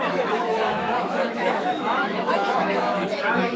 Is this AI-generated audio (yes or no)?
yes